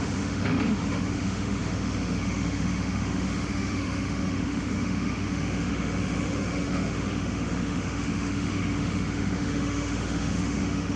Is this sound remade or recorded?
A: remade